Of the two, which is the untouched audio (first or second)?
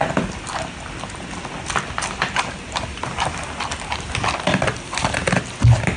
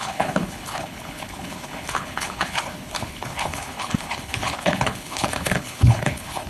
first